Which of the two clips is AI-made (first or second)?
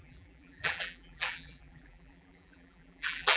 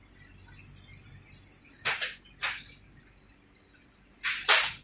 first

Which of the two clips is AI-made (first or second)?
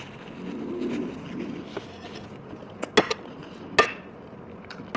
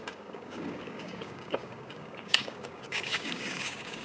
second